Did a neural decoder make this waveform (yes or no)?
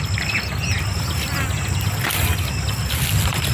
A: no